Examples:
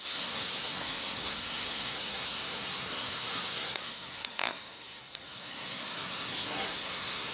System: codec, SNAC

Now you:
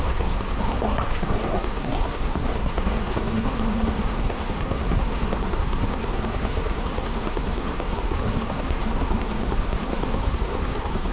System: codec, SNAC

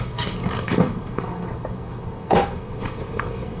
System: codec, SNAC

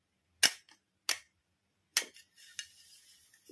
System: none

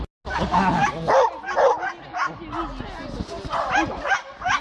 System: none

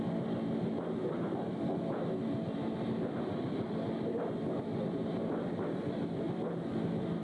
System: none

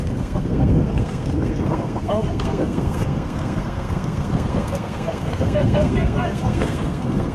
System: codec, SNAC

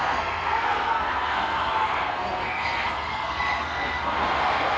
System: codec, SNAC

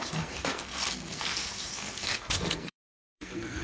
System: codec, SNAC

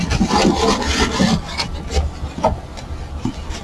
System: none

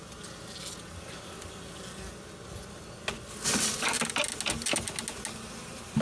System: none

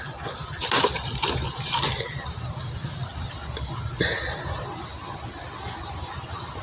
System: none